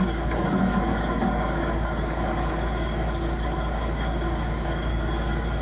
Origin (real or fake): fake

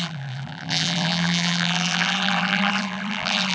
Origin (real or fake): fake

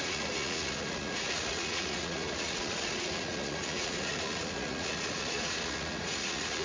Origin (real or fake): fake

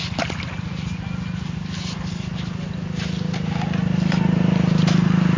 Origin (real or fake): real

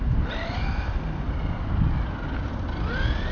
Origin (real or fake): real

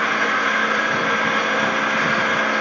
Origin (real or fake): real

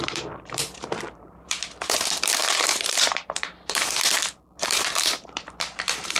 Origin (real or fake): fake